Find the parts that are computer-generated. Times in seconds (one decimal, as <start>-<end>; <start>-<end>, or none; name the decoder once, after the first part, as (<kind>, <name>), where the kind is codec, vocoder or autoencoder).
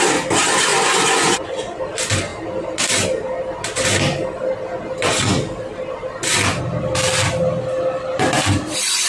0.7-1.8 (vocoder, Vocos)